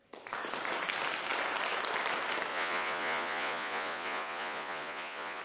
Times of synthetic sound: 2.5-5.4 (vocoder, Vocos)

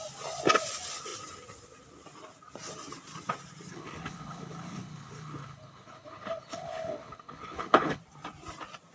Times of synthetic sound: 3.7-8.0 (codec, HILCodec)

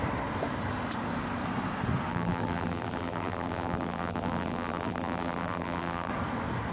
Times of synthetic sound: 2.1-6.1 (vocoder, BigVGAN v2)